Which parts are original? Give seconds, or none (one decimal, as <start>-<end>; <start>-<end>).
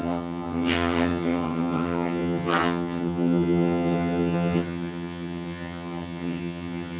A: none